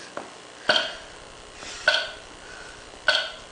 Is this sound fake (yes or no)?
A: no